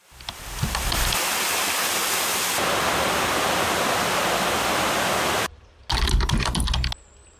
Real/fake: real